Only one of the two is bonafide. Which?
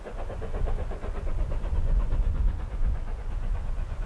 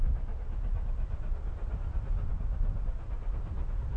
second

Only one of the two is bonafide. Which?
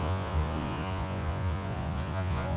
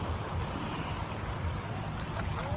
second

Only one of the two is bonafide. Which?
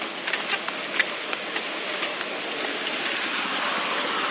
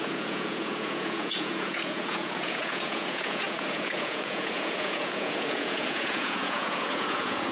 first